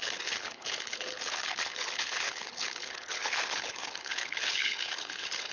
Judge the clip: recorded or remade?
remade